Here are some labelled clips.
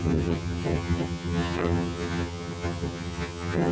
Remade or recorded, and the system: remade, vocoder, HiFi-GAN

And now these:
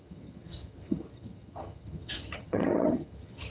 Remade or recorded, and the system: remade, vocoder, HiFi-GAN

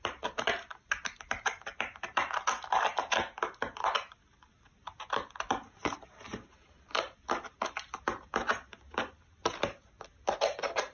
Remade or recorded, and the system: recorded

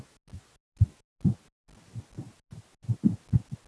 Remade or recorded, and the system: recorded